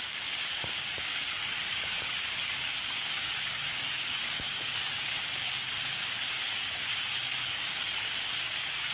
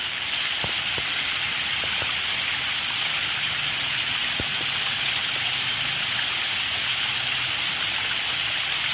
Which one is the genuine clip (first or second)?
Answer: second